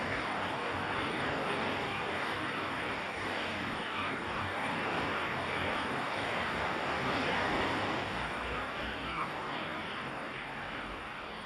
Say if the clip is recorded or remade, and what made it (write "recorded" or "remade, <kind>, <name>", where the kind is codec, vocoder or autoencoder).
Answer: remade, codec, DAC